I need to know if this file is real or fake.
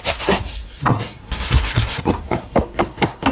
fake